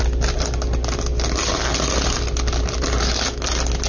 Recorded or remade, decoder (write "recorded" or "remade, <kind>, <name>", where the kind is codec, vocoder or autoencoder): recorded